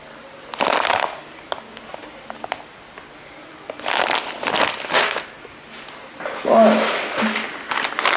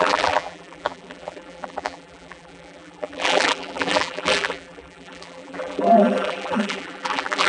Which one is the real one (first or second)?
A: first